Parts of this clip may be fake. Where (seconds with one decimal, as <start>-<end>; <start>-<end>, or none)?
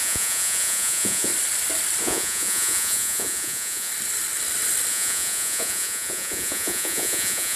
0.0-1.3; 2.0-3.9; 4.9-7.6